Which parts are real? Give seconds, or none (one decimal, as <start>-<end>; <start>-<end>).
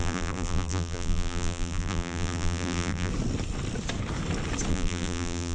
3.1-4.7